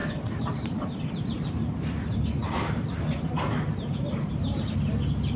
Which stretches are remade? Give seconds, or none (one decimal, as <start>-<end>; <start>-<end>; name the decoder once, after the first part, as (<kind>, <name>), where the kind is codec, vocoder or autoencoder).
0.0-5.4 (vocoder, BigVGAN v2)